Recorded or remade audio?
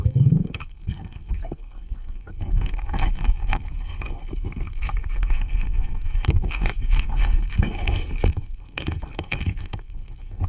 remade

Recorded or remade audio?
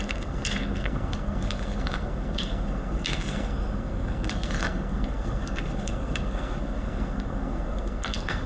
remade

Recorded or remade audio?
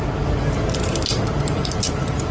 remade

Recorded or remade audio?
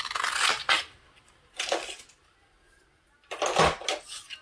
recorded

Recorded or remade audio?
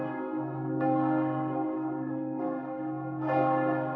remade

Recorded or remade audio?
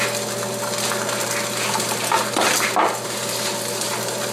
recorded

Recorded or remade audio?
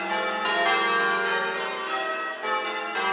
recorded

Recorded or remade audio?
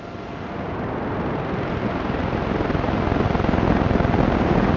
recorded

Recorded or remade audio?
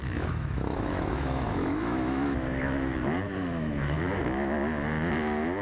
remade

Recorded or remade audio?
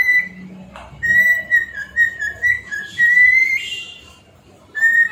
recorded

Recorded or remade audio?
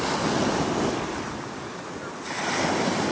recorded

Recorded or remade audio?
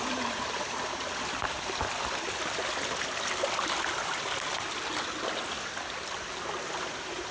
recorded